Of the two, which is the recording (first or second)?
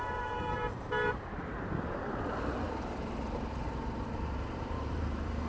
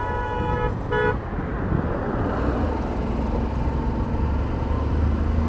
second